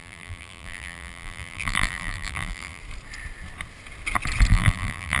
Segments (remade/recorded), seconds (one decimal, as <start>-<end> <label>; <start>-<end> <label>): 0.0-2.8 remade; 2.8-4.5 recorded; 4.5-5.2 remade